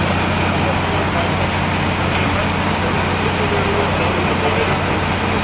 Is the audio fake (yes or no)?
no